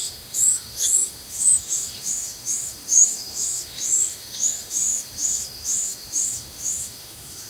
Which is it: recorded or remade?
remade